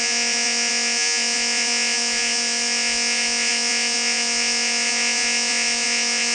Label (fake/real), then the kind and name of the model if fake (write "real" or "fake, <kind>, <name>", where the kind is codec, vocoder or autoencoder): fake, vocoder, Vocos